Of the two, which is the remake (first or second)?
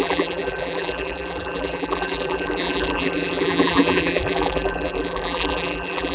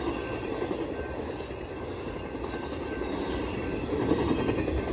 first